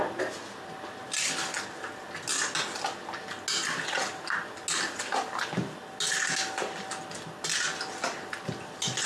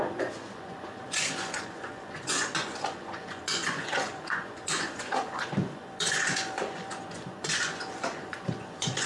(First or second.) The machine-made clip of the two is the second